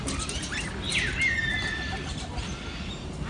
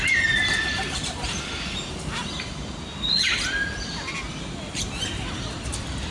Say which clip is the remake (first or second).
second